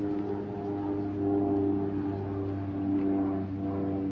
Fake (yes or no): no